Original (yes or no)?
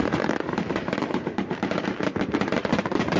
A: no